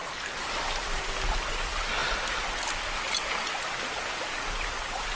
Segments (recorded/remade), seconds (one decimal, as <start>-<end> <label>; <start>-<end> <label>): 0.0-5.2 recorded